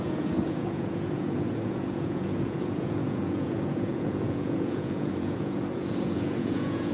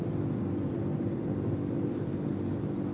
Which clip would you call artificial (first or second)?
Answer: first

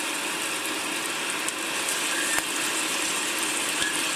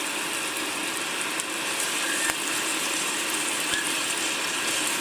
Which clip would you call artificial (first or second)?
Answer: second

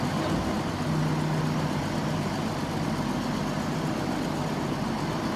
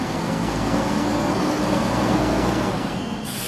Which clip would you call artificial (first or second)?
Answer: second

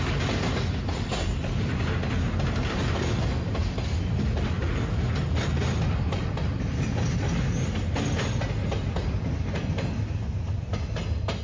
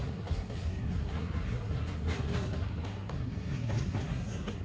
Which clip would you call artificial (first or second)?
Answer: second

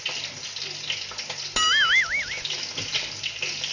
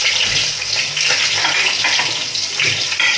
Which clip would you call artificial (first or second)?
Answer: second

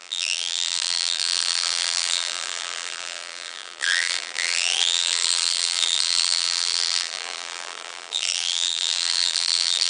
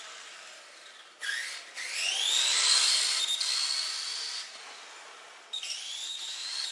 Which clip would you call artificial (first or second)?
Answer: first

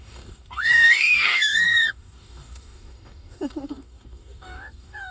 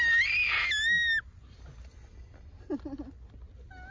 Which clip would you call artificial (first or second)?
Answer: first